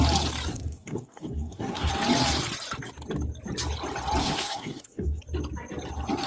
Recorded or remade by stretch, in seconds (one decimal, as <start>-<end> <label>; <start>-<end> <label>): 0.0-0.5 recorded; 0.5-1.9 remade; 1.9-4.2 recorded; 4.2-5.2 remade; 5.2-6.3 recorded